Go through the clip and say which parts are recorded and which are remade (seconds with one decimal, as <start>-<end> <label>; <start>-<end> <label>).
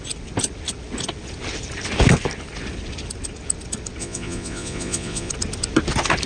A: 0.0-4.0 recorded; 4.0-5.3 remade; 5.3-6.3 recorded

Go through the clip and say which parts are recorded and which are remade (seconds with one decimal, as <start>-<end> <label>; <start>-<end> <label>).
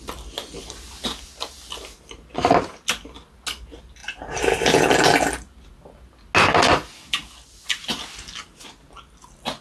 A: 0.0-9.6 recorded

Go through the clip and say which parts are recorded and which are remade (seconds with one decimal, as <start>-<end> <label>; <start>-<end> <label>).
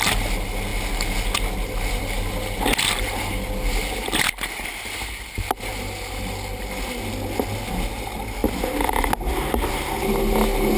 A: 0.0-10.8 recorded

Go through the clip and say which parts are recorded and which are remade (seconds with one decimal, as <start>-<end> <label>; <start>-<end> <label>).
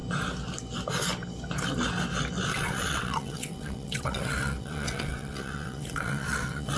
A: 0.0-2.5 recorded; 2.5-6.8 remade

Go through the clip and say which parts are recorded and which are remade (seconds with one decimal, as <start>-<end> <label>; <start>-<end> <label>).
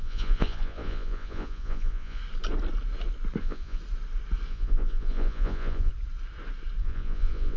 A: 0.0-2.2 remade; 2.2-3.4 recorded; 3.4-3.8 remade; 3.8-4.5 recorded; 4.5-5.9 remade; 5.9-6.8 recorded; 6.8-7.6 remade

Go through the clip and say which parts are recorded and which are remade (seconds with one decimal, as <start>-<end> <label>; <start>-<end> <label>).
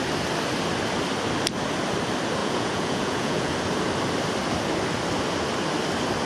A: 0.0-2.4 recorded; 2.4-3.5 remade; 3.5-6.3 recorded